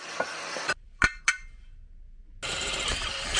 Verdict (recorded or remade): recorded